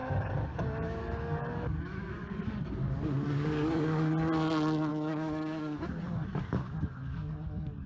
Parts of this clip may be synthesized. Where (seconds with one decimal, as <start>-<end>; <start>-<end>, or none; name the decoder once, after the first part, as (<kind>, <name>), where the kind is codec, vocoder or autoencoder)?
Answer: 0.0-4.1 (codec, DAC); 4.9-7.9